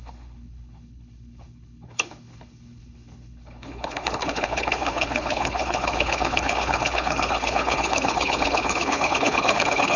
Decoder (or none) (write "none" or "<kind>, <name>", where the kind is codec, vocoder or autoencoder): codec, HILCodec